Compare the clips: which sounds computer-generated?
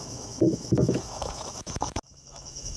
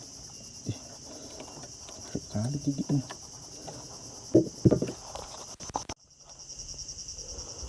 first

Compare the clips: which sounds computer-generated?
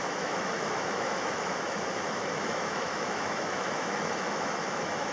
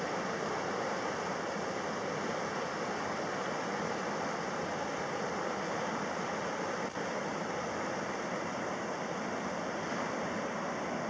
first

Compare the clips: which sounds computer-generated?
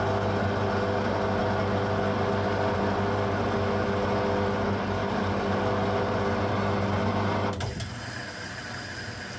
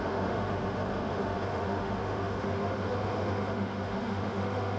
second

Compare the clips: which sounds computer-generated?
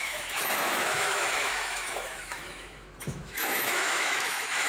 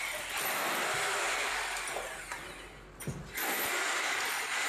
first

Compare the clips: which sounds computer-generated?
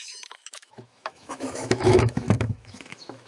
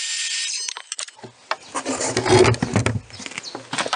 first